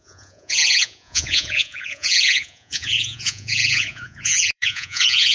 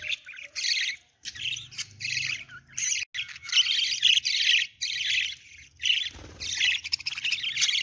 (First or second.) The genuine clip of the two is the second